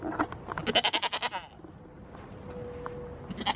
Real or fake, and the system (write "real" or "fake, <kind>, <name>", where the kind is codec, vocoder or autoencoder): real